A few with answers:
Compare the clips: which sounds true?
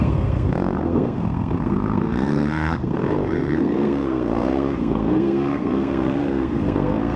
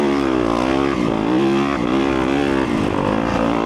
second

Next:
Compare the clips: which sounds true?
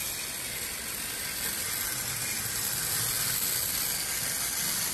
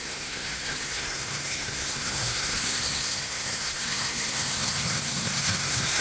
first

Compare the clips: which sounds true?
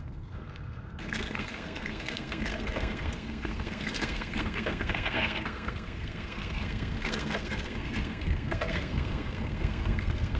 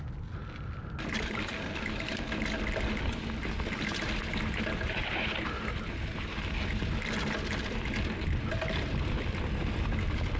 second